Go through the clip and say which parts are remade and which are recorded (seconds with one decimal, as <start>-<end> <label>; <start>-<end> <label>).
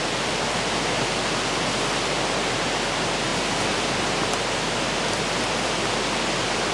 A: 0.0-6.7 recorded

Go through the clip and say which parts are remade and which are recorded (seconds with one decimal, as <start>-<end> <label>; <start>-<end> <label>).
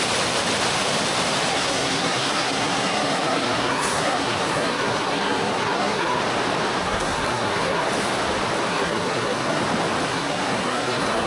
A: 0.0-1.5 recorded; 1.5-6.2 remade; 6.2-6.8 recorded; 6.8-7.9 remade; 7.9-8.7 recorded; 8.7-9.6 remade; 9.6-10.1 recorded; 10.1-11.3 remade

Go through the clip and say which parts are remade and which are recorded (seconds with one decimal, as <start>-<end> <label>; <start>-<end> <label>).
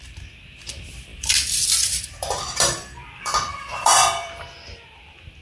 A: 0.0-1.1 recorded; 1.1-4.3 remade; 4.3-5.4 recorded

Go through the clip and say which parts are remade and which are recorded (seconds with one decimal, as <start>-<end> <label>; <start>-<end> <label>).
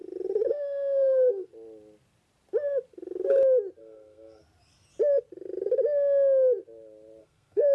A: 0.0-0.5 recorded; 0.5-1.5 remade; 1.5-3.8 recorded; 3.8-4.4 remade; 4.4-7.2 recorded; 7.2-7.7 remade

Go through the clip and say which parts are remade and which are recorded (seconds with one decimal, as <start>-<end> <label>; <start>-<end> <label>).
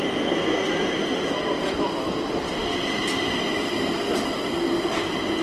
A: 0.0-5.4 recorded